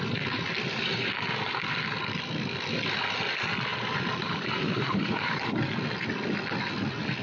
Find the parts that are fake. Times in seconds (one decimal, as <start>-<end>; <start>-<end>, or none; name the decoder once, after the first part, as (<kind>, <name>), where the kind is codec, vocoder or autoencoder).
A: 3.7-5.5 (vocoder, BigVGAN v2)